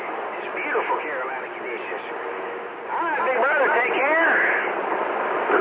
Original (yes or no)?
yes